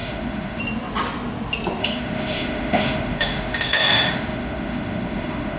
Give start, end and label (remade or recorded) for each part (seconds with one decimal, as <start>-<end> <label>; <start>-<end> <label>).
0.0-0.6 remade; 0.6-1.8 recorded; 1.8-5.6 remade